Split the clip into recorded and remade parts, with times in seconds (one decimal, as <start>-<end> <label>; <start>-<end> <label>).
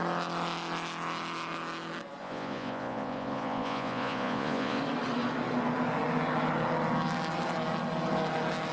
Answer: 0.0-2.2 recorded; 2.2-4.8 remade; 4.8-8.7 recorded